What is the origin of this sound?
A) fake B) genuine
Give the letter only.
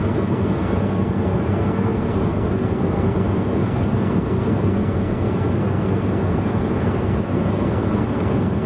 A